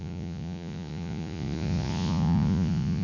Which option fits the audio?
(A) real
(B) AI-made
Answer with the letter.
B